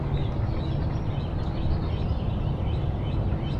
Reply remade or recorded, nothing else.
recorded